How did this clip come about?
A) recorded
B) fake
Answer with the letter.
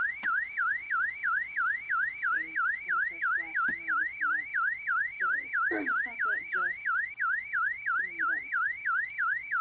B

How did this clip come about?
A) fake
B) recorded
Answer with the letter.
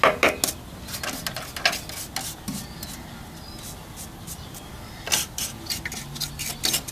B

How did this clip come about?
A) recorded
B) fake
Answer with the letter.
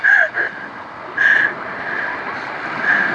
A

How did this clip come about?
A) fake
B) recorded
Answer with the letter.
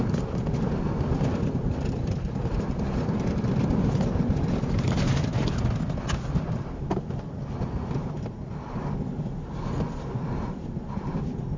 B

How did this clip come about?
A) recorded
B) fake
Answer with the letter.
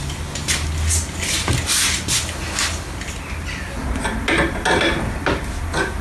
A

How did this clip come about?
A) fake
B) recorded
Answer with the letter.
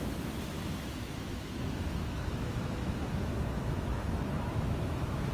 A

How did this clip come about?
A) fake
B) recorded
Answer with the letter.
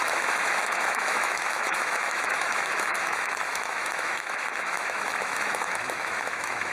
A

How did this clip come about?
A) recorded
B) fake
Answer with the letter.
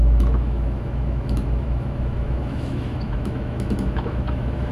B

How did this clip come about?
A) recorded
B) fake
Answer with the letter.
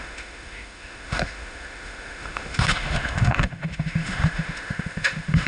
B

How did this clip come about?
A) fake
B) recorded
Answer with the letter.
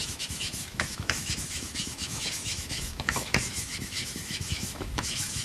A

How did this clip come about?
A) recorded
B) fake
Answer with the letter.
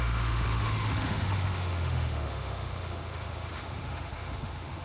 B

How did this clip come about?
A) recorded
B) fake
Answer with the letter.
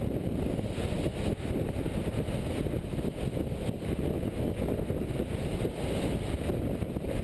A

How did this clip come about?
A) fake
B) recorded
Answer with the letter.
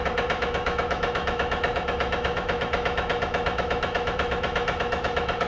A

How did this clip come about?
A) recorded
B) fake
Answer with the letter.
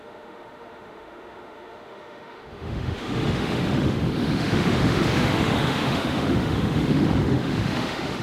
B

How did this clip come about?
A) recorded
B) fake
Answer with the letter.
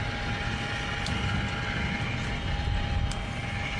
A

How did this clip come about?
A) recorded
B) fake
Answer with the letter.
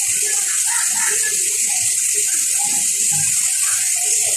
A